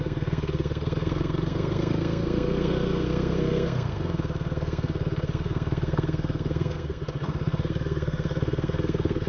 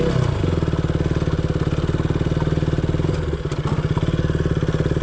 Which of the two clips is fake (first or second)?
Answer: first